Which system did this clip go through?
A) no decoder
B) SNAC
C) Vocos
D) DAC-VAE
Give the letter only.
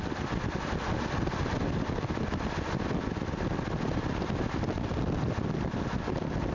A